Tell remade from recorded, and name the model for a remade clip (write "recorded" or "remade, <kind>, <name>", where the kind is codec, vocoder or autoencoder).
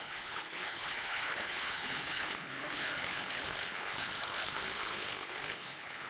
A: remade, codec, HILCodec